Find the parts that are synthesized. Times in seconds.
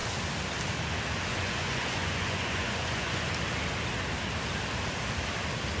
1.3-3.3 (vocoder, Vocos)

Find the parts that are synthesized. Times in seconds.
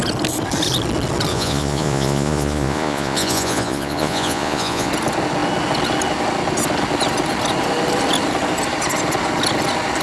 1.3-4.9 (vocoder, Vocos)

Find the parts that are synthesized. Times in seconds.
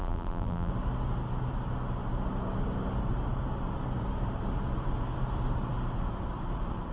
0.0-0.7 (vocoder, BigVGAN v2)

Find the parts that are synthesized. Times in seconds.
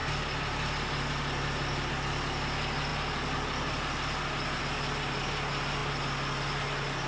none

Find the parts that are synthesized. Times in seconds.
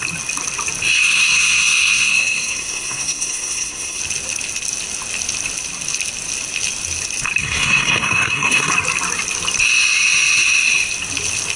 1.0-4.0 (codec, SNAC); 7.4-8.7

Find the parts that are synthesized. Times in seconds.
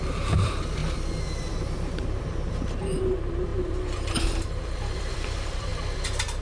0.0-0.8 (vocoder, BigVGAN v2); 2.0-3.5; 4.2-5.7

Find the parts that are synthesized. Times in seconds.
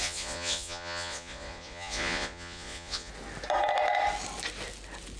0.0-3.1 (vocoder, Vocos)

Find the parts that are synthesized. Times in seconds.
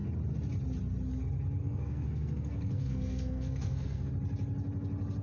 1.6-4.1 (codec, SNAC)